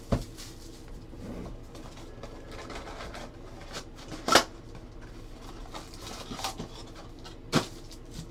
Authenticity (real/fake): real